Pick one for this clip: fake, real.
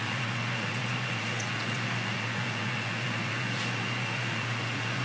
fake